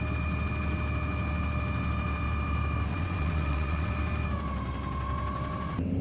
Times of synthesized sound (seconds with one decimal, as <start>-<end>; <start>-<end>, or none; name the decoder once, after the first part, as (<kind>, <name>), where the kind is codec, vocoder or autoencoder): 2.9-3.9 (vocoder, WaveNeXt)